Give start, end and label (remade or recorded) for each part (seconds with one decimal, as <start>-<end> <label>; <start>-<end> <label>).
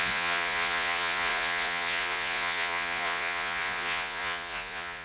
0.0-5.0 remade